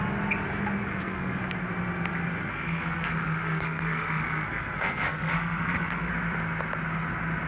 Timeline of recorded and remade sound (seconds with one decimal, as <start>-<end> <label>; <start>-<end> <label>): 0.0-0.8 recorded; 0.8-1.4 remade; 1.4-2.5 recorded; 2.5-6.1 remade; 6.1-7.5 recorded